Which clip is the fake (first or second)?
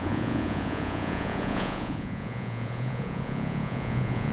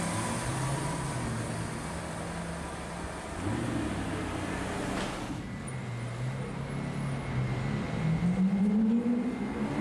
first